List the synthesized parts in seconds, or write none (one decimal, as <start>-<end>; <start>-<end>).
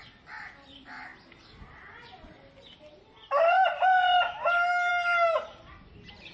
none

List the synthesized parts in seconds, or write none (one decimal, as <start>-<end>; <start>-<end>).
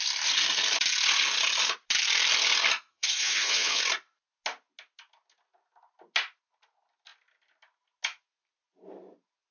2.9-3.8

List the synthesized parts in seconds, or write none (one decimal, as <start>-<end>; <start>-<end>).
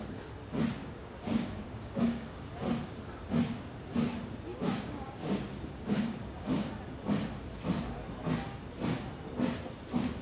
0.8-2.5; 4.5-6.7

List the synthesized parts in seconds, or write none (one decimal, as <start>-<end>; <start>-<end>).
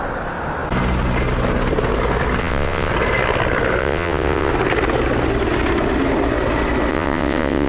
2.4-2.9; 3.8-4.5; 6.9-7.7